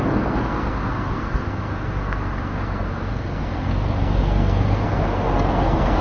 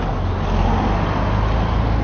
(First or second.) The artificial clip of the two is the first